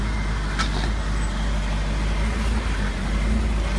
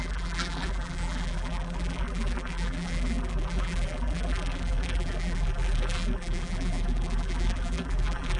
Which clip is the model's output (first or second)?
second